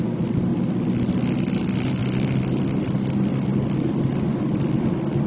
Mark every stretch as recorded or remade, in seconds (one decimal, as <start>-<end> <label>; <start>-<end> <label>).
0.0-5.3 recorded